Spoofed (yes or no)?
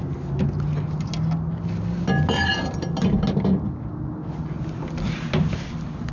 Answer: no